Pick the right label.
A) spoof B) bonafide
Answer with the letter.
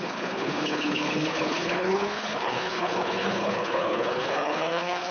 A